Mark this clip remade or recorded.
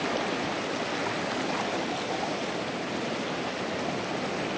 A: recorded